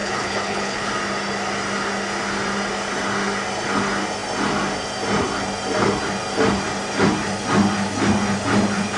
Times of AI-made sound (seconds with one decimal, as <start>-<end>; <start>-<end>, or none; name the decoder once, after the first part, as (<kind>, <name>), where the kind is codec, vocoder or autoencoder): 0.0-0.9 (codec, HILCodec)